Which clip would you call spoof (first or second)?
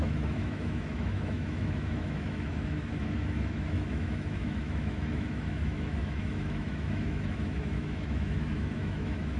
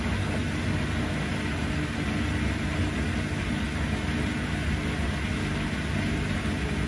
first